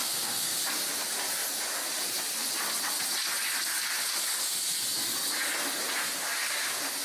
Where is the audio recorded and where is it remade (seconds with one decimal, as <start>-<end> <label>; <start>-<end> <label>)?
0.0-0.6 remade; 0.6-7.0 recorded